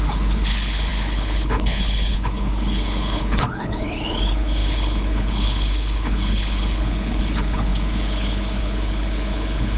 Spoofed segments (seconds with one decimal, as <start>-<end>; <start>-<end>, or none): 0.0-9.8